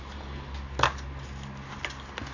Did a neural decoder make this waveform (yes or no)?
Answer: no